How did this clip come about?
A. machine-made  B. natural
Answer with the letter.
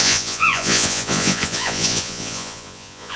A